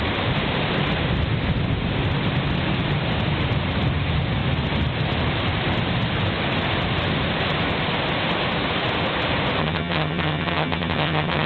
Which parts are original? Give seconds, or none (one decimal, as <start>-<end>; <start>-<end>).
0.0-9.6